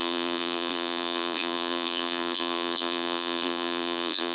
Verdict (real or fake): fake